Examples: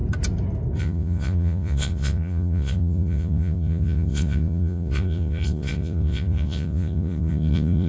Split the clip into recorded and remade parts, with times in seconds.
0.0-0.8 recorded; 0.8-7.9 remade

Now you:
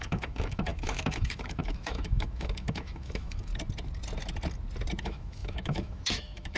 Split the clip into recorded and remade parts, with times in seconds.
0.0-3.5 remade; 3.5-5.0 recorded; 5.0-6.6 remade